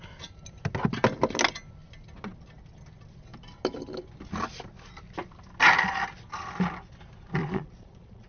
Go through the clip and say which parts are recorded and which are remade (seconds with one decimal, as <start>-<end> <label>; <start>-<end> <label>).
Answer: 0.0-7.4 recorded; 7.4-8.3 remade

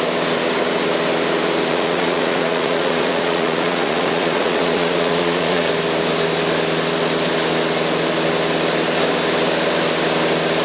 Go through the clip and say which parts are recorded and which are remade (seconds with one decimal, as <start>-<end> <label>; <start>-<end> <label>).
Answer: 0.0-1.7 recorded; 1.7-5.7 remade; 5.7-10.6 recorded

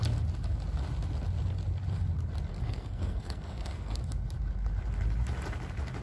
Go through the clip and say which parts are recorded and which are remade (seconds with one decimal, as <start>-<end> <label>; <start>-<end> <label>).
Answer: 0.0-2.5 recorded; 2.5-4.0 remade; 4.0-6.0 recorded

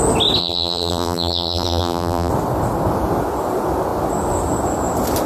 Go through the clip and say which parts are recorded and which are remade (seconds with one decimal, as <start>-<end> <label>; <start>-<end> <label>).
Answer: 0.0-0.4 recorded; 0.4-2.3 remade; 2.3-5.3 recorded

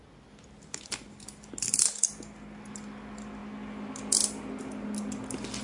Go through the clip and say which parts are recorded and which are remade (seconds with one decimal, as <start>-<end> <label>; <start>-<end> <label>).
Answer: 0.0-5.6 recorded